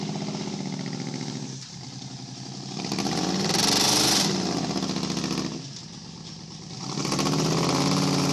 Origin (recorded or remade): recorded